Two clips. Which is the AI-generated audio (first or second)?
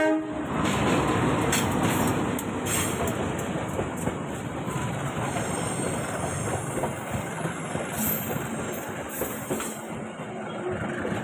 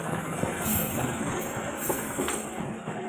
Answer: second